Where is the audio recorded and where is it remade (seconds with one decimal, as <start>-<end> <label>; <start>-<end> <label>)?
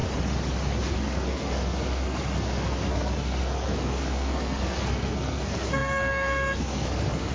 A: 0.0-0.9 recorded; 0.9-7.3 remade